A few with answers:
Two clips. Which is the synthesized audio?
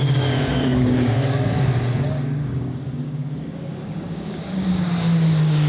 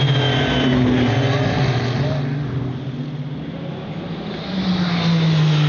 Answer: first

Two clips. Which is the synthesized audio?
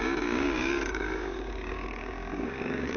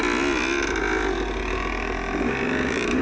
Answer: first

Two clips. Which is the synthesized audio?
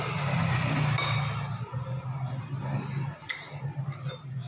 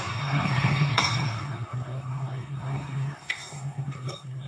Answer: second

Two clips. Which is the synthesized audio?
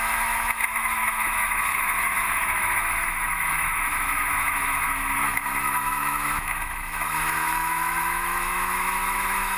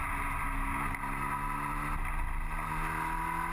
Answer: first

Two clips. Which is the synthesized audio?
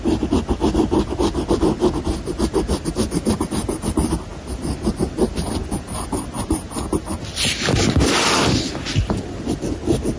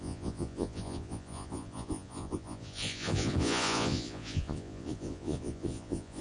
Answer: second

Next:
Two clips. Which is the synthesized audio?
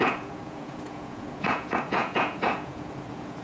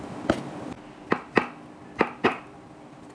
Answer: first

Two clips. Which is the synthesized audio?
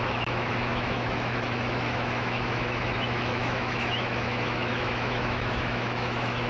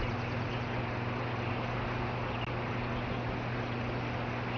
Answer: first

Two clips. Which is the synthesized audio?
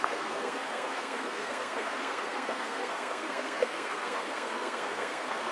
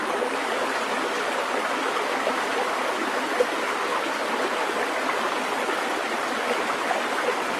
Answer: first